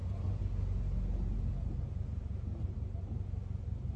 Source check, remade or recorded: recorded